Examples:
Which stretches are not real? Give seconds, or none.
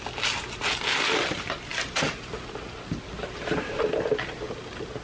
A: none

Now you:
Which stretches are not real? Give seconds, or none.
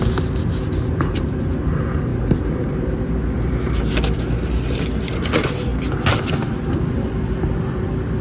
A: none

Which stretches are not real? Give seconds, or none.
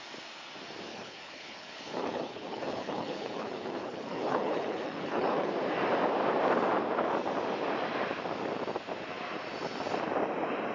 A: 0.9-5.5 (codec, HILCodec)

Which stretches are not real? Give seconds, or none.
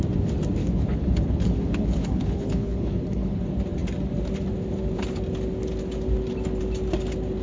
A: 0.6-3.4 (codec, HILCodec)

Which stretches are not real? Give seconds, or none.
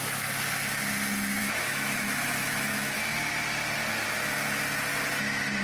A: 1.4-3.3 (autoencoder, DAC-VAE)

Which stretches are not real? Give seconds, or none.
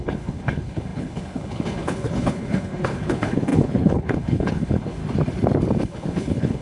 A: 0.0-5.0 (codec, HILCodec); 5.8-6.6